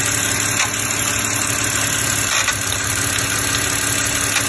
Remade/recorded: recorded